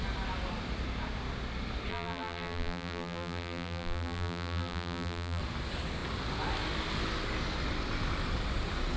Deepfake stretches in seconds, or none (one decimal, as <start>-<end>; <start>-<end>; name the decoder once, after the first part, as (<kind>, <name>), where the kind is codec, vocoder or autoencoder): 1.9-5.4 (vocoder, BigVGAN v2)